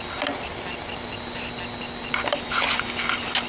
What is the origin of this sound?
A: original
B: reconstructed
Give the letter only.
A